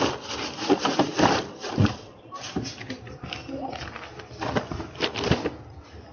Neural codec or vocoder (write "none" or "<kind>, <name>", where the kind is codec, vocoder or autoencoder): none